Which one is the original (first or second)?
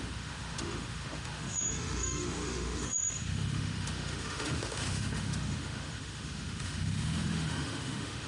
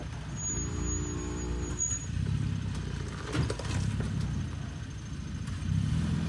second